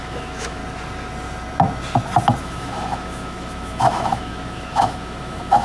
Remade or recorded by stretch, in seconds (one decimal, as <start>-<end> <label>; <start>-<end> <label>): 0.0-0.6 remade; 0.6-2.4 recorded; 2.4-5.6 remade